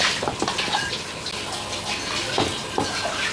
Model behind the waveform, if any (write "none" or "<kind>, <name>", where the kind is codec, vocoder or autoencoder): none